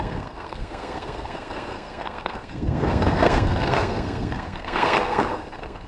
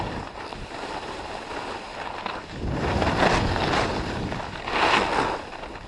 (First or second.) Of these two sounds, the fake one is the first